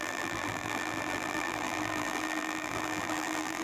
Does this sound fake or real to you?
fake